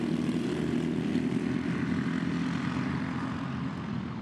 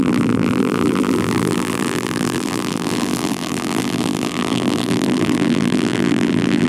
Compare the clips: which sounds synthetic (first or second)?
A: second